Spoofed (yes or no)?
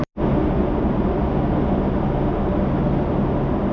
no